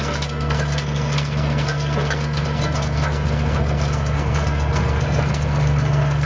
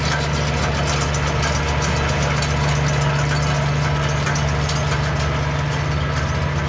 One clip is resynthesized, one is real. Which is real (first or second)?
second